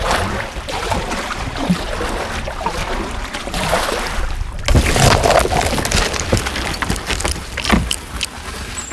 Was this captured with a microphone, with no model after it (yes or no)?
yes